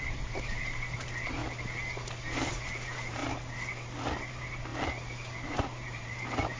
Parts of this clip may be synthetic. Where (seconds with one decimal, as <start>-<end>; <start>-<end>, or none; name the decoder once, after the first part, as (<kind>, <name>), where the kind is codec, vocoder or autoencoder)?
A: 0.0-1.4 (vocoder, BigVGAN v2); 2.5-3.2; 4.3-4.7; 5.4-6.6